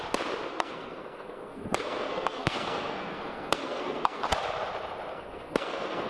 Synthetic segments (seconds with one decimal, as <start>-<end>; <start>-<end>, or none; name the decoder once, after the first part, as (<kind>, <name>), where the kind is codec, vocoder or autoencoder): 0.5-4.2 (codec, SNAC); 5.1-6.1